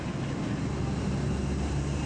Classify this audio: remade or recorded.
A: recorded